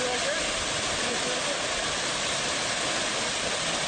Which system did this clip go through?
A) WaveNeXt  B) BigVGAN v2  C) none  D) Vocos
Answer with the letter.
C